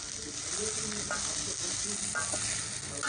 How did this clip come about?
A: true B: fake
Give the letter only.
A